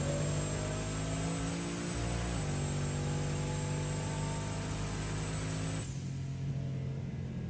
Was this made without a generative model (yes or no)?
yes